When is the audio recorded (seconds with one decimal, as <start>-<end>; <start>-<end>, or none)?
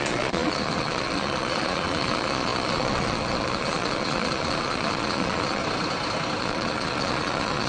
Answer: 5.6-6.4